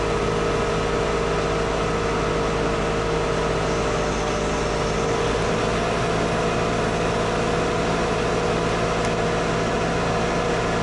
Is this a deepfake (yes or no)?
no